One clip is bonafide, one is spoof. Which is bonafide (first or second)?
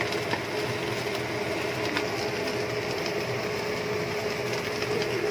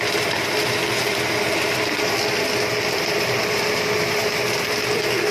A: first